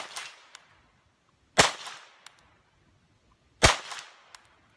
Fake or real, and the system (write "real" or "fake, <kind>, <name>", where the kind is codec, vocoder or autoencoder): real